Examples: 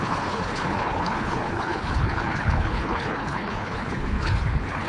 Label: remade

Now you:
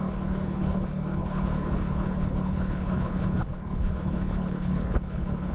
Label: remade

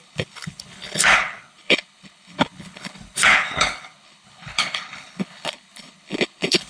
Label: remade